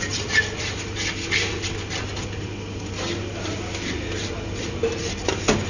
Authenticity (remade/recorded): recorded